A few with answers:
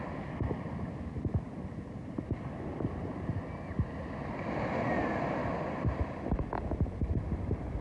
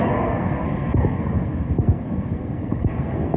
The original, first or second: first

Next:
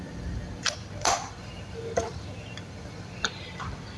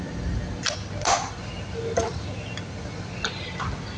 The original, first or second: second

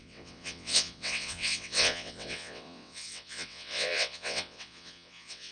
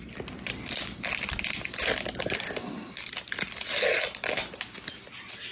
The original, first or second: second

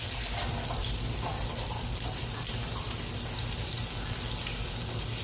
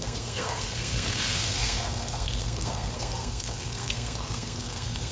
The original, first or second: first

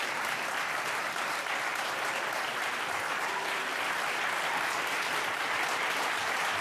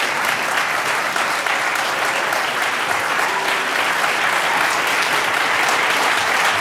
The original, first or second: second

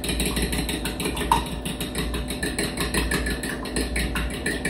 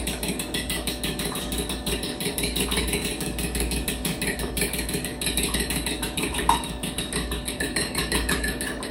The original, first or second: first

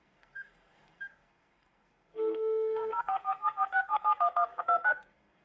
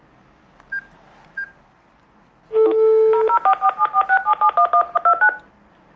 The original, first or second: second